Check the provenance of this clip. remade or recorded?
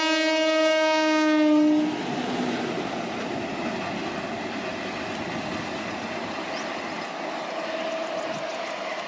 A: recorded